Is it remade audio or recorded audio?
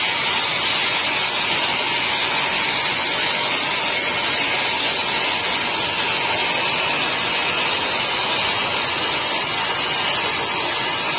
remade